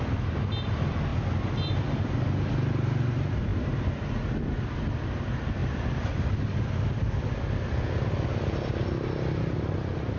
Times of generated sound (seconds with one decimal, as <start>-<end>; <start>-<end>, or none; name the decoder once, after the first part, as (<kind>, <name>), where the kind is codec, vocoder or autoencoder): none

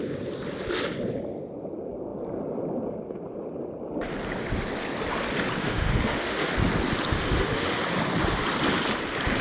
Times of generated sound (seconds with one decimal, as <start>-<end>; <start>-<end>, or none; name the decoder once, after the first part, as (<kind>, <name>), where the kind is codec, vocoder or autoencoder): 5.6-6.5 (autoencoder, DAC-VAE); 7.1-7.8

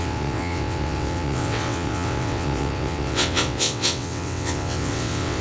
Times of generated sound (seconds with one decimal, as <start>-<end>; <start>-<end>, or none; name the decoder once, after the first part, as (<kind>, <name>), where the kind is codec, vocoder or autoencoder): 0.0-5.4 (vocoder, WaveNeXt)

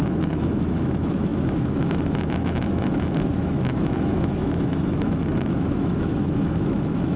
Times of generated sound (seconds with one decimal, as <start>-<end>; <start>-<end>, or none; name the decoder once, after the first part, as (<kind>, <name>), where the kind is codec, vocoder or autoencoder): 0.0-7.2 (autoencoder, DAC-VAE)

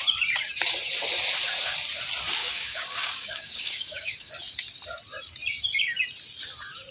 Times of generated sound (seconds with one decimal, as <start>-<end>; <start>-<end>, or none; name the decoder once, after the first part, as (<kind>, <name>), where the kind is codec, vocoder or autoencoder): 2.4-4.3 (codec, DAC)

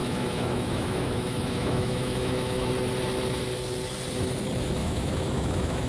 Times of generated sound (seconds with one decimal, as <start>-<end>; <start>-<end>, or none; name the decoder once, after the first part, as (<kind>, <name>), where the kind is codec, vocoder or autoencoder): 0.0-2.7 (autoencoder, DAC-VAE); 4.8-5.9